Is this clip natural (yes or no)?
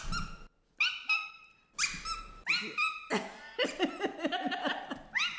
yes